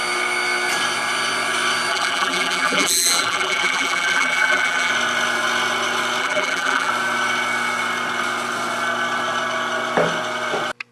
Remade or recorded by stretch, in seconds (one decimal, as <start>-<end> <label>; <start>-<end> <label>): 0.0-1.9 recorded; 1.9-4.9 remade; 4.9-6.2 recorded; 6.2-6.9 remade; 6.9-10.9 recorded